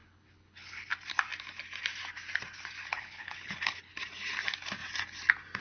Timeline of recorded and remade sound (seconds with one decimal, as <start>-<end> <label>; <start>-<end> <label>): 0.0-0.9 remade; 0.9-2.9 recorded; 2.9-3.9 remade; 3.9-5.6 recorded